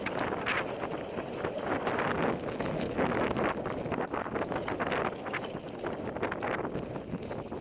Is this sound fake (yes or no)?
no